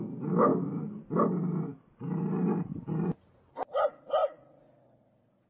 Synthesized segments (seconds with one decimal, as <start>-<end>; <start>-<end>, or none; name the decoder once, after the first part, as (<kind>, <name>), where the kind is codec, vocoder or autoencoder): none